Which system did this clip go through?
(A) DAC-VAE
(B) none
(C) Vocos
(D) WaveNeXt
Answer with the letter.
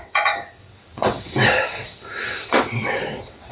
D